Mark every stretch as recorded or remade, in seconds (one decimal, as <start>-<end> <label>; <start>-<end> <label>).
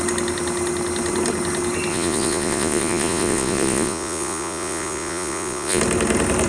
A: 0.0-1.9 recorded; 1.9-5.8 remade; 5.8-6.5 recorded